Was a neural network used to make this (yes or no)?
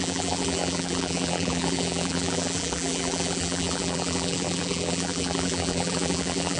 yes